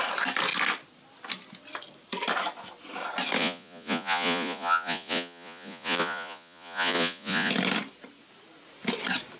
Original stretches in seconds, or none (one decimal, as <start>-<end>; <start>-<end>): 0.0-3.4; 7.5-9.4